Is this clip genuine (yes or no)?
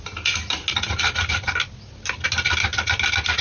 yes